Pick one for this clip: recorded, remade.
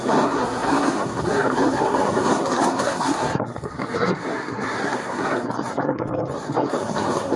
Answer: remade